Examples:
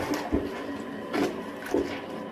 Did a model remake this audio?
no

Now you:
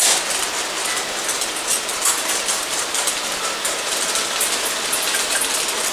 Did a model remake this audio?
no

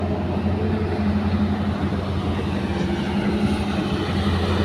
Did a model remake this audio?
no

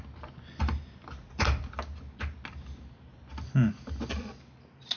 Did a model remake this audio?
no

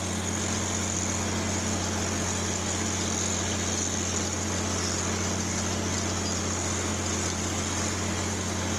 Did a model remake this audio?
no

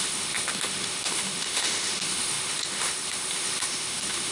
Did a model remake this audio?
yes